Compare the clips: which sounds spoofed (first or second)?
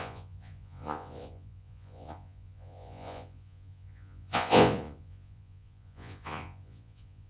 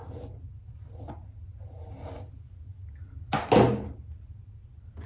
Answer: first